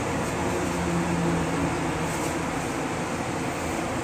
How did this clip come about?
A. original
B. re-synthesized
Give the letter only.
A